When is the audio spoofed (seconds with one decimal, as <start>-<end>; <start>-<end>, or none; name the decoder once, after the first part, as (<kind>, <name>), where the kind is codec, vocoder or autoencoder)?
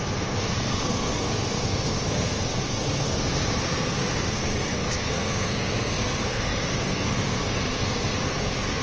0.0-8.8 (codec, SNAC)